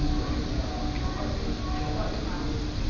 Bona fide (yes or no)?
yes